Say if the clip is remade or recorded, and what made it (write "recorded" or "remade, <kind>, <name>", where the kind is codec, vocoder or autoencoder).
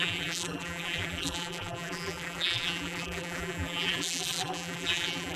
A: remade, vocoder, BigVGAN v2